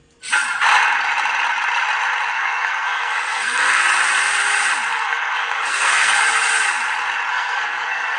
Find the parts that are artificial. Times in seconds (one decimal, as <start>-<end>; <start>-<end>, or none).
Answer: 2.3-3.8; 4.9-6.2; 7.3-8.2